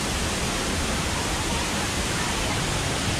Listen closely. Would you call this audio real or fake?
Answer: real